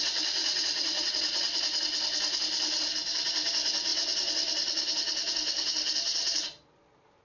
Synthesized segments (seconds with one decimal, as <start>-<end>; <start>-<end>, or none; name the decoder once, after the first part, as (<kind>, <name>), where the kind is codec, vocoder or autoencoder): 0.4-1.1 (vocoder, Vocos)